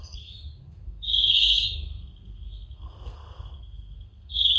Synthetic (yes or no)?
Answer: yes